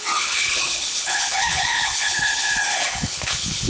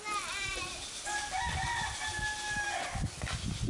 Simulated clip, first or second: first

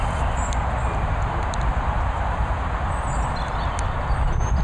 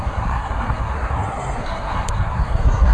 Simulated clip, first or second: second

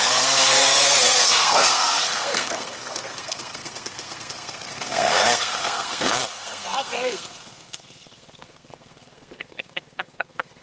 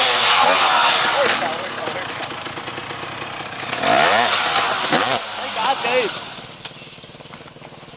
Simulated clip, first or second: first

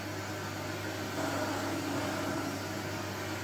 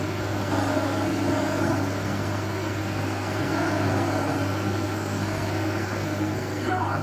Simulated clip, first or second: second